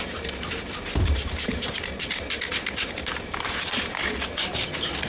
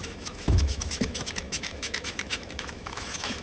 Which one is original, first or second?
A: first